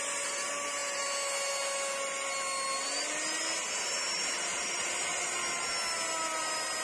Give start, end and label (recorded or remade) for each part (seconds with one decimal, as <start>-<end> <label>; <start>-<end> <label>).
0.0-6.8 recorded